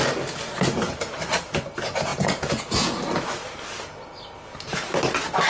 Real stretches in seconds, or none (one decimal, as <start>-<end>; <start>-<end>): 0.0-2.1; 3.0-5.5